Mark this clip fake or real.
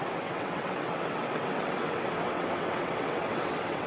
fake